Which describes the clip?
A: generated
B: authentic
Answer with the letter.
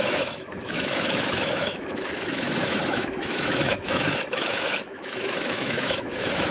A